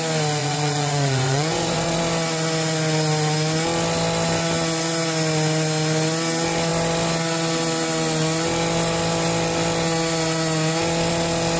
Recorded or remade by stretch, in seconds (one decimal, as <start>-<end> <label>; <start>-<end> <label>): 0.0-0.4 recorded; 0.4-2.0 remade; 2.0-11.6 recorded